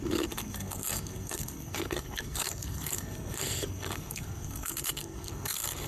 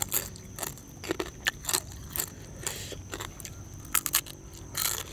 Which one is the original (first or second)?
second